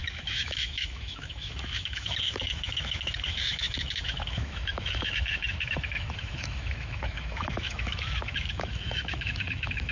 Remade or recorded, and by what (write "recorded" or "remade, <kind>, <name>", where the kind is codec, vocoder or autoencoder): remade, autoencoder, DAC-VAE